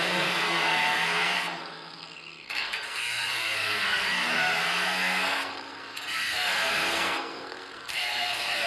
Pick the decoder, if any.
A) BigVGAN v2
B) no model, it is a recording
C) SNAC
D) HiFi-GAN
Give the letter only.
C